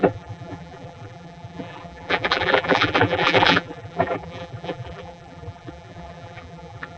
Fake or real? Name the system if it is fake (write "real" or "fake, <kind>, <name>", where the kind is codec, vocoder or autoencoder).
fake, vocoder, BigVGAN v2